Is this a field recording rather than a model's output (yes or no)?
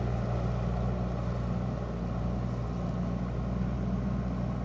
yes